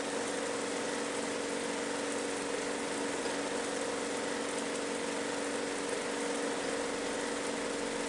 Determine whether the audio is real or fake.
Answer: real